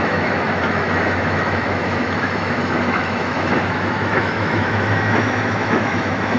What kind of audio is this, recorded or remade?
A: remade